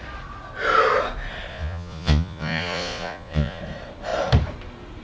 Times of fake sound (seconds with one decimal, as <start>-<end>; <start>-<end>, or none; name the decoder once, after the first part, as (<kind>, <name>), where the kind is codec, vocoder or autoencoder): 1.5-3.6 (vocoder, Vocos)